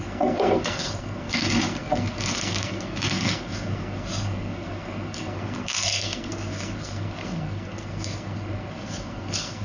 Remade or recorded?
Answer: remade